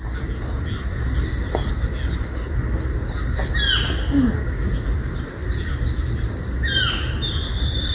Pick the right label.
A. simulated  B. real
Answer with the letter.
B